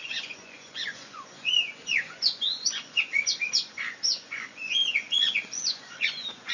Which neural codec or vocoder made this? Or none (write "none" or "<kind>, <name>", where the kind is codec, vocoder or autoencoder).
vocoder, Vocos